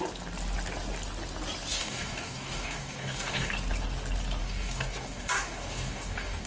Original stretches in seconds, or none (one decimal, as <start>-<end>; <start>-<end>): 0.0-1.7; 3.5-4.4

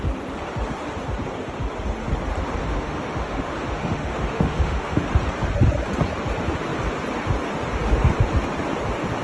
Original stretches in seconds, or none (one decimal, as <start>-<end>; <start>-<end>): 0.0-2.6; 5.0-9.2

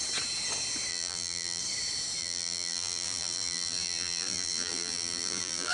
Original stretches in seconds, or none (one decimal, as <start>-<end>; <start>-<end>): 0.0-0.9; 1.6-2.2